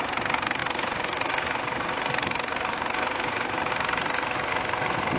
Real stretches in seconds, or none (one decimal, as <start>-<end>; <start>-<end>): 0.0-0.6; 3.7-5.2